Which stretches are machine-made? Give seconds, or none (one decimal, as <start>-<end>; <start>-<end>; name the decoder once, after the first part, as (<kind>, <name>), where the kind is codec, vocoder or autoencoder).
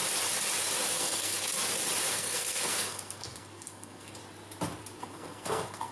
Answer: 0.9-1.3 (codec, SNAC); 2.1-4.2; 5.0-5.9